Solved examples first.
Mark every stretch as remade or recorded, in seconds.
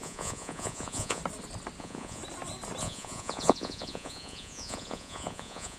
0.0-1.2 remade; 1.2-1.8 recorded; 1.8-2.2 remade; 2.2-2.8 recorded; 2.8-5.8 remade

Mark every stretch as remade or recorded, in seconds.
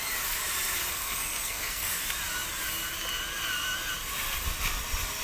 0.0-0.9 recorded; 0.9-2.0 remade; 2.0-5.2 recorded